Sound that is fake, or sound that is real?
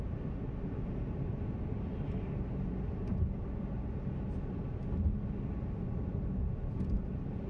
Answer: real